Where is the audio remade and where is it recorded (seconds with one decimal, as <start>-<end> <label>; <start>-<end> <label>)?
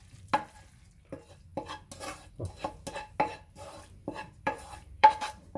0.0-3.3 recorded; 3.3-5.6 remade